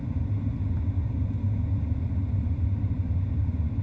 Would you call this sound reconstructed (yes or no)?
no